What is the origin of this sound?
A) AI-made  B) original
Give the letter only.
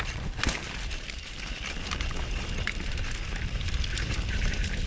A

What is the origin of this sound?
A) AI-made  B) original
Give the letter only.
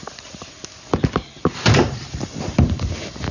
A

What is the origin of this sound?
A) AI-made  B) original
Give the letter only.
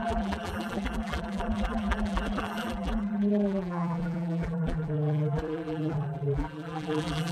A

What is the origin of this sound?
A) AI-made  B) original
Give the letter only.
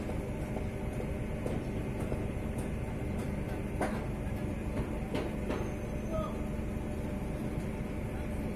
B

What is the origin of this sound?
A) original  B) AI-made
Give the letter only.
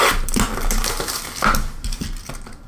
A